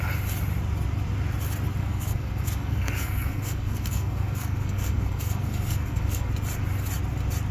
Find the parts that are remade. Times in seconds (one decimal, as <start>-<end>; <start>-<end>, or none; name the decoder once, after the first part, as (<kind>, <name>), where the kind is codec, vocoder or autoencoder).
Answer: 1.8-6.3 (codec, SNAC)